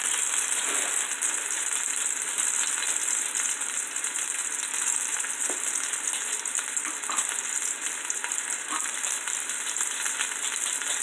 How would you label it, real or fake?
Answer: fake